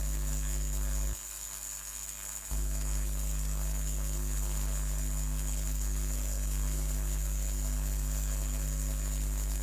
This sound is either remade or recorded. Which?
remade